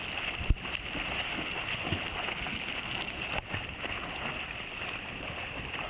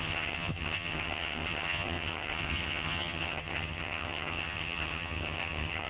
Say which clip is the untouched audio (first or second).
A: first